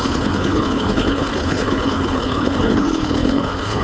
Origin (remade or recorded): remade